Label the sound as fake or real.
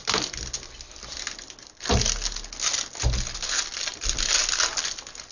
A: real